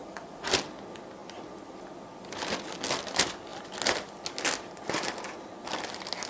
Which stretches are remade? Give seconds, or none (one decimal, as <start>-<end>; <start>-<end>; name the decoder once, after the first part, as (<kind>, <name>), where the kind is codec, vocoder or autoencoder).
0.0-0.5 (vocoder, Vocos)